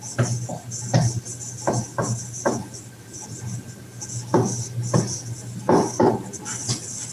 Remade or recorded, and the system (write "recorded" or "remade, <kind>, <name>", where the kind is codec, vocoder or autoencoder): recorded